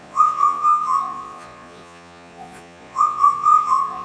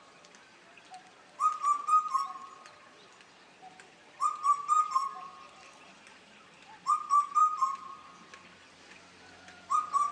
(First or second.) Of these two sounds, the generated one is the first